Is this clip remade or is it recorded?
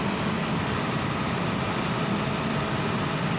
recorded